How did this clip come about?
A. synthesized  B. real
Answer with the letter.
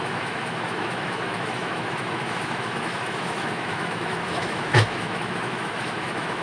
A